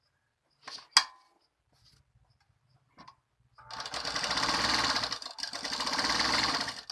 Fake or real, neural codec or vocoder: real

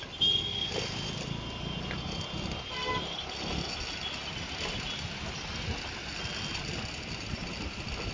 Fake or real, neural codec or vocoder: real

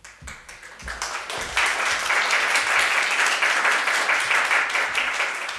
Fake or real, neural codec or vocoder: real